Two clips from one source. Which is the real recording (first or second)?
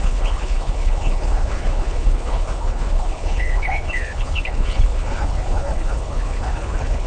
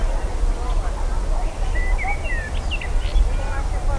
second